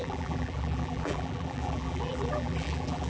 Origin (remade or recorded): remade